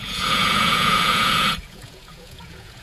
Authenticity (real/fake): fake